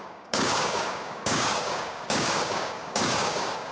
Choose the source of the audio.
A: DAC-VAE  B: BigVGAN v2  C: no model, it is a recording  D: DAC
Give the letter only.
D